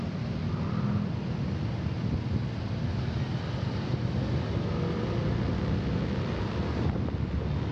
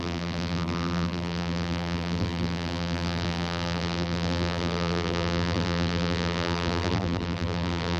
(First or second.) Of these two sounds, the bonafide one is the first